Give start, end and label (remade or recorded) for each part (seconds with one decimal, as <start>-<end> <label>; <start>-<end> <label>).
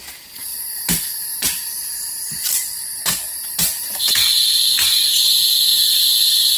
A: 0.0-0.5 recorded; 0.5-4.0 remade; 4.0-5.7 recorded; 5.7-6.6 remade